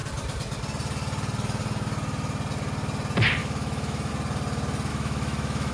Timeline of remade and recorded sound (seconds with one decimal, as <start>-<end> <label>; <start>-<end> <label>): 0.0-3.4 recorded; 3.4-4.1 remade; 4.1-4.9 recorded; 4.9-5.7 remade